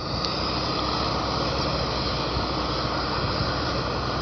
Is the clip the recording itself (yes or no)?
yes